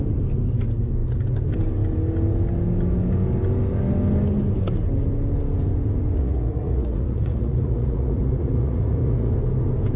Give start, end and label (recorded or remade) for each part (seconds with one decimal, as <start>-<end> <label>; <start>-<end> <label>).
0.0-6.2 recorded; 6.2-9.3 remade; 9.3-10.0 recorded